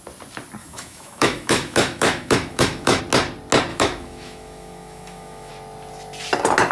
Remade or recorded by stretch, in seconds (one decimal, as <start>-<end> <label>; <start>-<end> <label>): 0.0-0.6 recorded; 0.6-3.0 remade; 3.0-3.7 recorded; 3.7-5.5 remade; 5.5-6.7 recorded

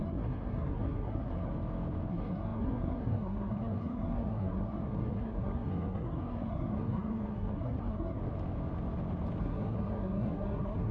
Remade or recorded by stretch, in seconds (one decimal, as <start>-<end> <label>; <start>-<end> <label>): 0.0-1.5 remade; 1.5-2.1 recorded; 2.1-8.2 remade; 8.2-9.4 recorded; 9.4-10.9 remade